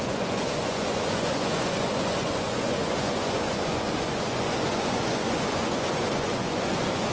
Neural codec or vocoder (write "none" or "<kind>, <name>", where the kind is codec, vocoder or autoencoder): vocoder, Vocos